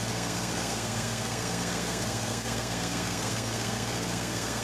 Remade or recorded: remade